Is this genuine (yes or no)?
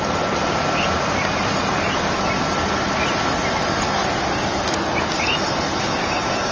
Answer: yes